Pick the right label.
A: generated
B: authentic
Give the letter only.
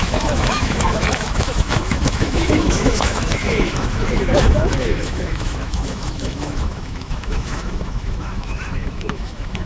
A